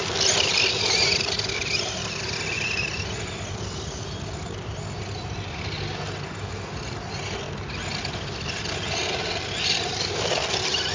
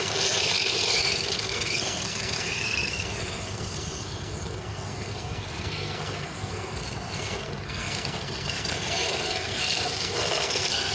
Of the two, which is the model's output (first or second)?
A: second